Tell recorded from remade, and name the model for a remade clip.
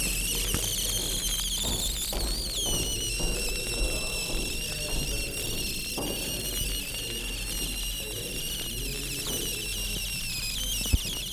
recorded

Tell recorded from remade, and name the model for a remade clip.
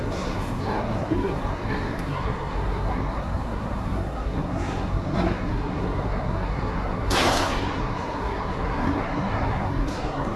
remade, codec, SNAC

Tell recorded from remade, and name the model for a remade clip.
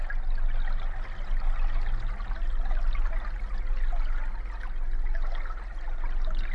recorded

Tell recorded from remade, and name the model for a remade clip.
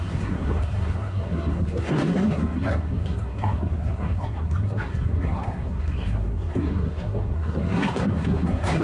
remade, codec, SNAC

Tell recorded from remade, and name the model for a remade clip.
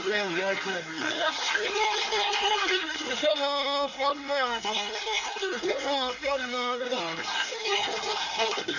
remade, codec, SNAC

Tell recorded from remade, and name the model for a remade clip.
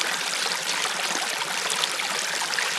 recorded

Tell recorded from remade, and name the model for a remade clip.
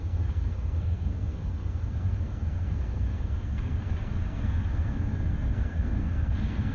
remade, codec, SNAC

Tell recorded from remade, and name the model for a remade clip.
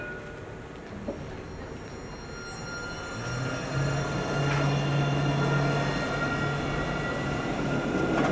recorded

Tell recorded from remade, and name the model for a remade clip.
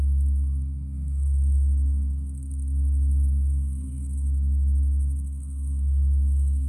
remade, codec, SNAC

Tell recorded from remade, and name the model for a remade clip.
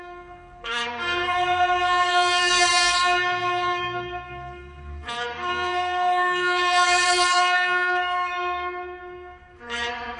remade, codec, SNAC